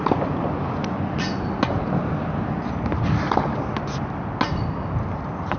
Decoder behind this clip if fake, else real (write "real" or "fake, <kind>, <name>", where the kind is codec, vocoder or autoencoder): real